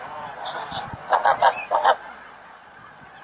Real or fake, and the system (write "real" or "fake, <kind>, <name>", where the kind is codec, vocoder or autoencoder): fake, vocoder, Vocos